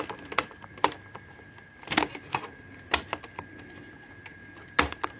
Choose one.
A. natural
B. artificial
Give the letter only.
A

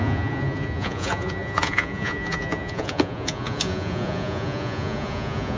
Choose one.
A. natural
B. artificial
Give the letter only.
B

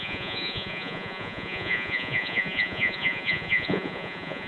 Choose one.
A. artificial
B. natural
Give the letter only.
A